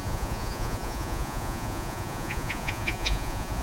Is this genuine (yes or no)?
no